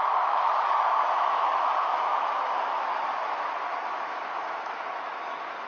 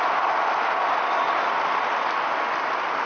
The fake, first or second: first